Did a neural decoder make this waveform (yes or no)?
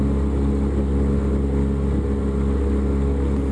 no